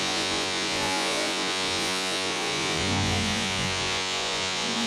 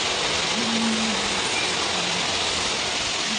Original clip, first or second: second